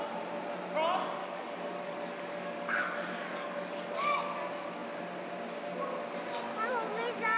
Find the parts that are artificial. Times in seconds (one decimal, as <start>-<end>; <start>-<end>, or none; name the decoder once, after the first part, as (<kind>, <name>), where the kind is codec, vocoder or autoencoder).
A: 1.2-4.2 (codec, DAC)